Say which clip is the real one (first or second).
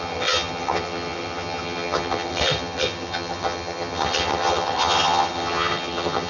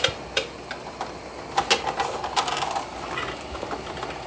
second